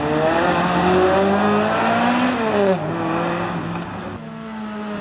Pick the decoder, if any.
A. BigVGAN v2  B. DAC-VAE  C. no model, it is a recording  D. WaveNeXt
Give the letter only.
C